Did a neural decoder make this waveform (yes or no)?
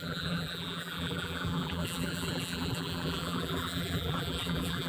yes